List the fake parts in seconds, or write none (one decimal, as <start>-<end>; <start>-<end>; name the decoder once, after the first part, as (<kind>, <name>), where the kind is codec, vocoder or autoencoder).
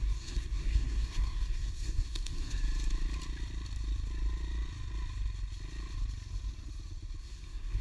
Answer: 0.0-2.6 (codec, SNAC); 7.2-7.8